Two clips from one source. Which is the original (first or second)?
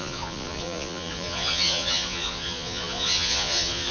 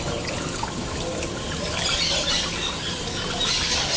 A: second